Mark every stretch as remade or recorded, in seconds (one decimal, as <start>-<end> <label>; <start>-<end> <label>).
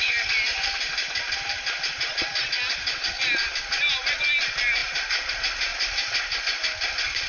0.0-5.7 recorded; 5.7-6.4 remade; 6.4-7.3 recorded